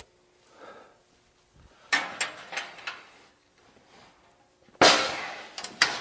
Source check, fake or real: real